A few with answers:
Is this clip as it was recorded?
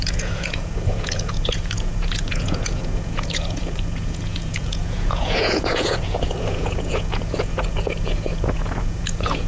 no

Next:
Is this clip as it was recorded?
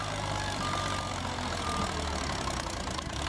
no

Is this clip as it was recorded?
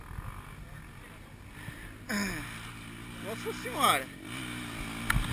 yes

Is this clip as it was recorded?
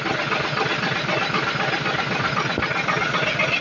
yes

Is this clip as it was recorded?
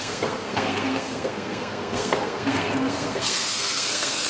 no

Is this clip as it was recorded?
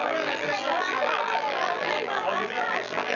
no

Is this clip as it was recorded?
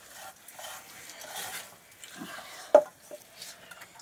yes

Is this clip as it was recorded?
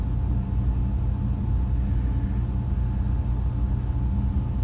yes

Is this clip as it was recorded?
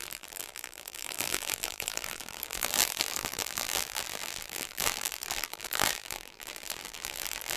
no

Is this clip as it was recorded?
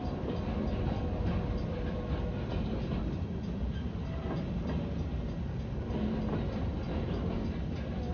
yes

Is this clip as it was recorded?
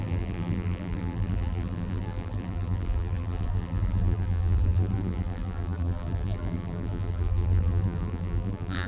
no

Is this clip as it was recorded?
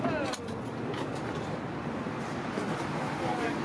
yes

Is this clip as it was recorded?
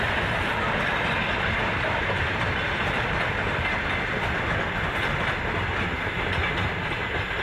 yes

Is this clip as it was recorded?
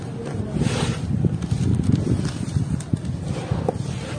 yes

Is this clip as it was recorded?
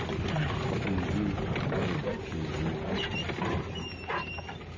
yes